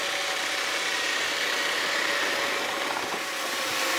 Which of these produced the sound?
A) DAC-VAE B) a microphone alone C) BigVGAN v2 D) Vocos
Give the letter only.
B